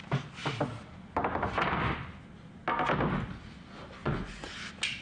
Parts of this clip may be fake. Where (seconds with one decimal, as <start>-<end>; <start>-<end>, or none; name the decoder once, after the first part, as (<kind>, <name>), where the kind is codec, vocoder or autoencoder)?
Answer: 4.0-4.6 (vocoder, Vocos)